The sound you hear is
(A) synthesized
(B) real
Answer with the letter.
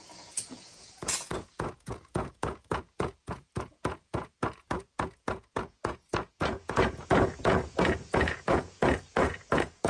A